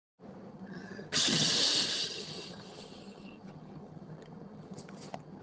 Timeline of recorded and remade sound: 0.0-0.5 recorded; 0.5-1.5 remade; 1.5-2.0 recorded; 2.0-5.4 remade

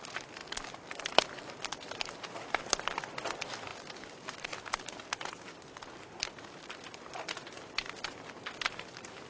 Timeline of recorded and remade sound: 0.0-9.3 recorded

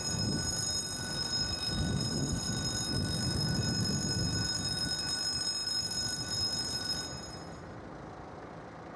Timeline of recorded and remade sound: 0.0-2.0 recorded; 2.0-2.5 remade; 2.5-9.0 recorded

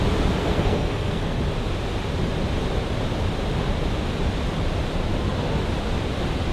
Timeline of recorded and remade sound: 0.0-0.4 recorded; 0.4-1.4 remade; 1.4-6.5 recorded